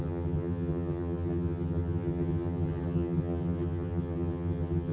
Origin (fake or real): fake